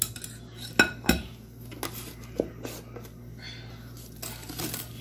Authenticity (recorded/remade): recorded